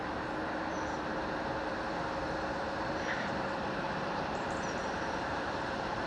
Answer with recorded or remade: remade